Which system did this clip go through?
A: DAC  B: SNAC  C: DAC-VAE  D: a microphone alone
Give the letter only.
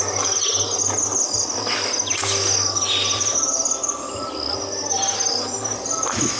D